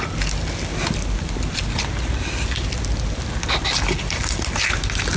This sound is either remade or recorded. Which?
recorded